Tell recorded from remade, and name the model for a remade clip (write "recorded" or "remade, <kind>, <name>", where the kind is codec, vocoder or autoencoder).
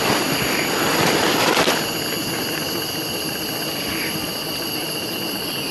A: recorded